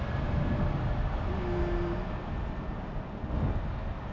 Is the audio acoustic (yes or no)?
yes